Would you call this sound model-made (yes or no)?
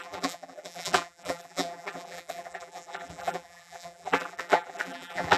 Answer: yes